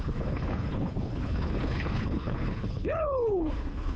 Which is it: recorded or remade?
remade